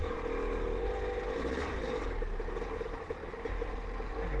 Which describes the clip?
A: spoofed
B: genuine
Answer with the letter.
B